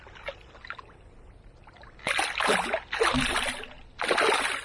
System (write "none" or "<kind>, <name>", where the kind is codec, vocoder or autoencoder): none